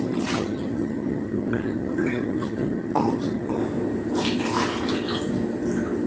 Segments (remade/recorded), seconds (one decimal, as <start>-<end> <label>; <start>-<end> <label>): 0.0-3.6 remade; 3.6-6.1 recorded